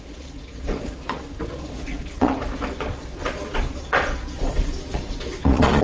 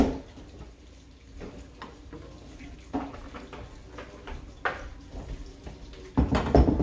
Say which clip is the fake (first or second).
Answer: first